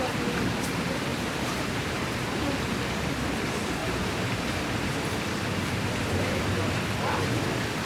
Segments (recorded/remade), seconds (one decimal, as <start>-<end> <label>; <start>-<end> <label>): 0.0-1.1 recorded; 1.1-3.1 remade; 3.1-3.8 recorded; 3.8-6.4 remade; 6.4-7.8 recorded